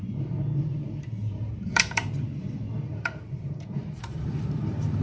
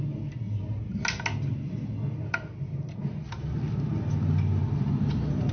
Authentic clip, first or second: second